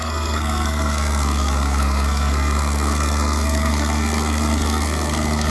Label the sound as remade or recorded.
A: remade